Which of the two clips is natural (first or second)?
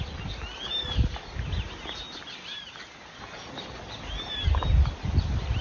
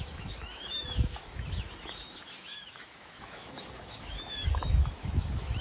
first